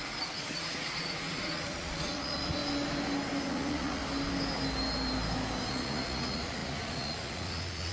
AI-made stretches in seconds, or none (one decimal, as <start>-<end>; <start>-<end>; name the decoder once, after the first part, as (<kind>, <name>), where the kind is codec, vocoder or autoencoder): 0.0-2.6 (vocoder, Vocos); 3.5-4.0; 5.7-7.9